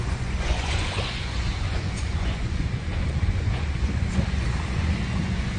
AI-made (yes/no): yes